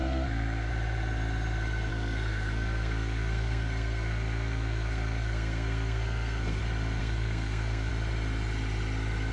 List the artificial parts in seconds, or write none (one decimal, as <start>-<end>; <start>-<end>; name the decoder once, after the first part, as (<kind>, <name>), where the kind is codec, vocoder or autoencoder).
0.0-0.7 (codec, SNAC); 1.9-6.6; 7.0-7.9